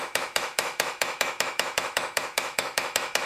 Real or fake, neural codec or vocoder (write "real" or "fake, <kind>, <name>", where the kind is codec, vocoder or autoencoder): fake, autoencoder, DAC-VAE